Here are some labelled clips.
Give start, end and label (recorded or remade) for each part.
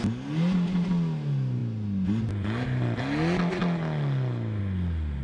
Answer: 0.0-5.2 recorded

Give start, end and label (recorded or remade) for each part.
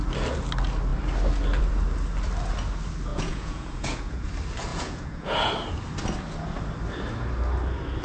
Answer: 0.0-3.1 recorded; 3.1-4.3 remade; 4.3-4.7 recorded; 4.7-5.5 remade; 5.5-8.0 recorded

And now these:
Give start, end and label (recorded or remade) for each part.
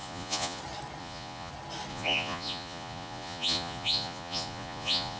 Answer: 0.0-0.6 remade; 0.6-1.0 recorded; 1.0-1.5 remade; 1.5-1.9 recorded; 1.9-5.2 remade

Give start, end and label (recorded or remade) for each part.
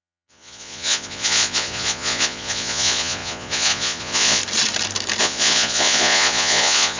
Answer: 0.0-4.4 remade; 4.4-5.2 recorded; 5.2-7.0 remade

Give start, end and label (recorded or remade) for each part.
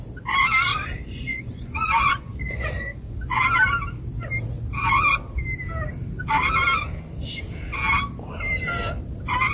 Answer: 0.0-0.7 recorded; 0.7-3.4 remade; 3.4-9.5 recorded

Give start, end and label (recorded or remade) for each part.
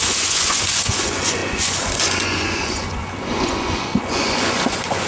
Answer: 0.0-5.1 remade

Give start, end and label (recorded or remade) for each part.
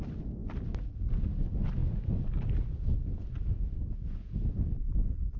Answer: 0.0-3.8 recorded; 3.8-4.4 remade; 4.4-5.4 recorded